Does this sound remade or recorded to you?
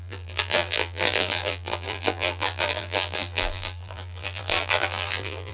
remade